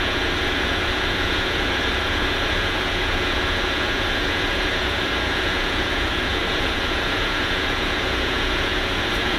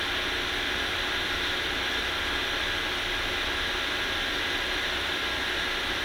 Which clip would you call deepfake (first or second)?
first